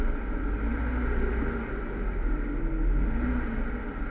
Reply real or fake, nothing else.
real